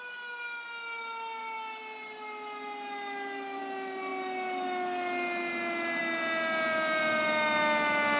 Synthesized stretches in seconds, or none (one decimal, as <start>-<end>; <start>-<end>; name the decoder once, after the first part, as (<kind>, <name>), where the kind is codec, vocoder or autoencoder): none